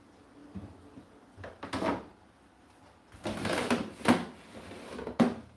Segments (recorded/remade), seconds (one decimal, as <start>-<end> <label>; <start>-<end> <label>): 0.0-5.6 recorded